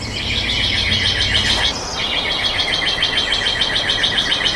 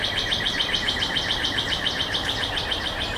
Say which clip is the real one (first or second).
first